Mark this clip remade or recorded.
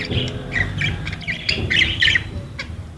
remade